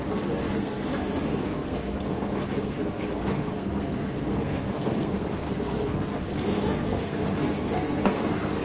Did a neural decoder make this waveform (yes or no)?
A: yes